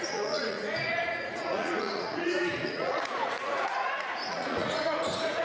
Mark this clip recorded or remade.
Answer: remade